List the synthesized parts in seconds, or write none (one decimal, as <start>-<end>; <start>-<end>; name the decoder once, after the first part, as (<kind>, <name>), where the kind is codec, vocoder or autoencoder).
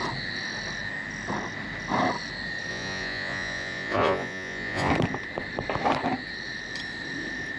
2.7-4.9 (vocoder, Vocos)